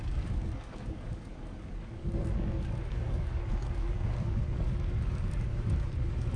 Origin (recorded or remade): remade